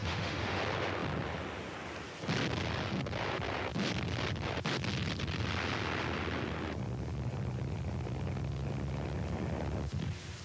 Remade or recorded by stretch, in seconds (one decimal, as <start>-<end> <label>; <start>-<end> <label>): 0.0-0.6 remade; 0.6-10.4 recorded

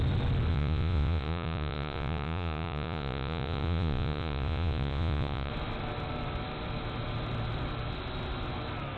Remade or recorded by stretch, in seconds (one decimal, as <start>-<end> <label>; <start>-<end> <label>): 0.0-0.5 recorded; 0.5-5.5 remade; 5.5-9.0 recorded